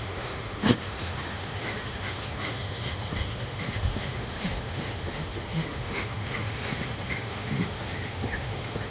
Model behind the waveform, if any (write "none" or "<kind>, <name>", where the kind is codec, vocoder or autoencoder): autoencoder, DAC-VAE